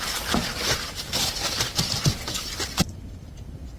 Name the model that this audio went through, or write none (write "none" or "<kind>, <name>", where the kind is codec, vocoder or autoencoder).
none